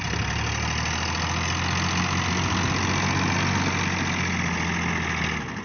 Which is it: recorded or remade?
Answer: recorded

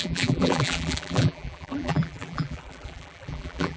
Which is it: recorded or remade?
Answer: remade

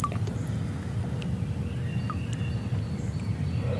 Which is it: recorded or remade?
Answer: recorded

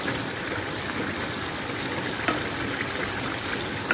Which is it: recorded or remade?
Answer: recorded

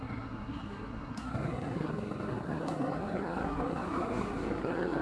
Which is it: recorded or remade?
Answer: remade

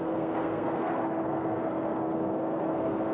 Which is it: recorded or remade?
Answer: remade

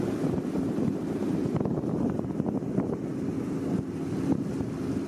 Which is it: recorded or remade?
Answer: recorded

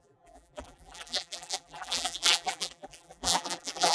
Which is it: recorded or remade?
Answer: remade